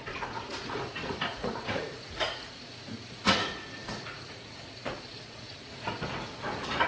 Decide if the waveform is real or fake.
fake